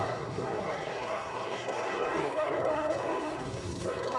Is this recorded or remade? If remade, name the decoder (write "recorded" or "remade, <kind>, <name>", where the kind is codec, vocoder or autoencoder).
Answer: remade, codec, SNAC